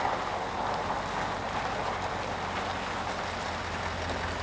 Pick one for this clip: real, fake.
real